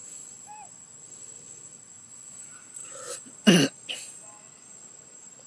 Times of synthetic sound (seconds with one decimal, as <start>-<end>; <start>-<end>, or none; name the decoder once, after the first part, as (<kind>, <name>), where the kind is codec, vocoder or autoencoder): 2.4-2.8 (vocoder, BigVGAN v2); 5.0-5.5